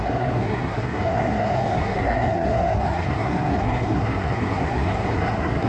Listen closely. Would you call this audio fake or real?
fake